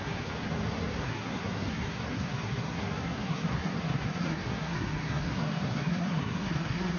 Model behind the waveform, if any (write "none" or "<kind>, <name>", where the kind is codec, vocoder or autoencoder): codec, SNAC